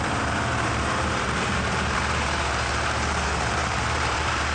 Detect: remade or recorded remade